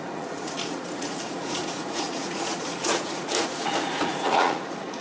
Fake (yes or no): yes